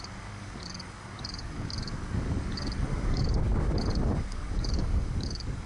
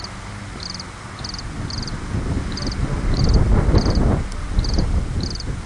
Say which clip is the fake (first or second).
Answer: first